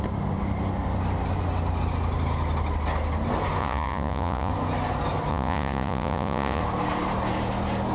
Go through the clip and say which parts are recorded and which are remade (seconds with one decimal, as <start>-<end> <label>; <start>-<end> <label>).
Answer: 0.0-3.6 recorded; 3.6-4.5 remade; 4.5-5.3 recorded; 5.3-6.6 remade; 6.6-7.9 recorded